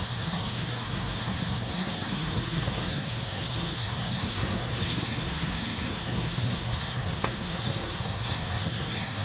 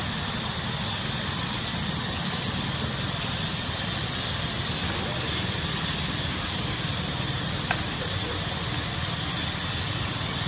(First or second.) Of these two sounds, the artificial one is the first